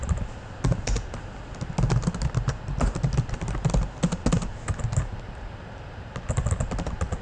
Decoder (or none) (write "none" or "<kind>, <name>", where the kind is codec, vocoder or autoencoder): none